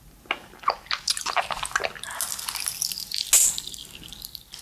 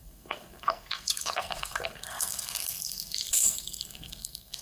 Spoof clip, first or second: second